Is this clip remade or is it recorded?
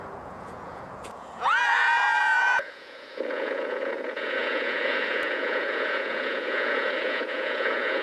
remade